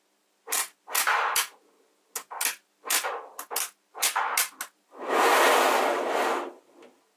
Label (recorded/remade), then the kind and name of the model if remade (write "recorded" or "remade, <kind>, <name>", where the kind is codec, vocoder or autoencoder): recorded